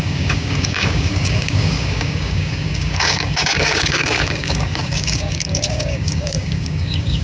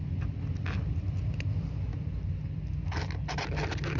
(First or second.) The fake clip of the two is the first